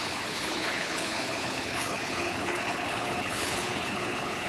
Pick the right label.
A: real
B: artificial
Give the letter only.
B